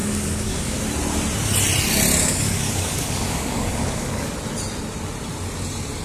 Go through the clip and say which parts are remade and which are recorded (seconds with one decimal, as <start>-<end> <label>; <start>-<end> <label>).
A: 0.0-0.8 remade; 0.8-2.2 recorded; 2.2-4.3 remade; 4.3-6.0 recorded